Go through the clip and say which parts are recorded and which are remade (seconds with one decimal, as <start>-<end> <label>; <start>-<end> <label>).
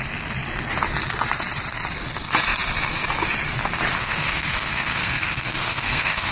0.0-4.0 recorded; 4.0-6.3 remade